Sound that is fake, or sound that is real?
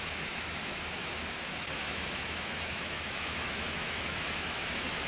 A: fake